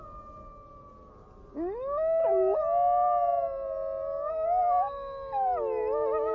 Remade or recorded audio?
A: recorded